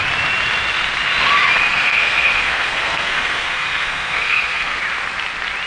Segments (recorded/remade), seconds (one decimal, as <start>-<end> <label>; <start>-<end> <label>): 0.0-1.7 recorded; 1.7-4.8 remade; 4.8-5.7 recorded